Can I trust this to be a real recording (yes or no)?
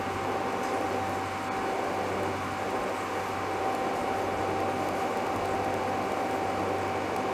yes